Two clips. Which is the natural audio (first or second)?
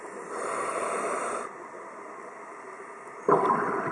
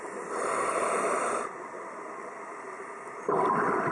first